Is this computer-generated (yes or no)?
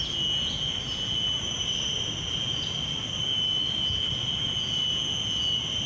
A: no